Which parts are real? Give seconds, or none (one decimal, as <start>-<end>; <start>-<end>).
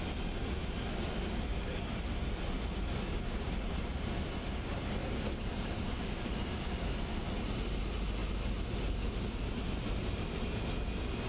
0.0-5.0; 6.4-11.3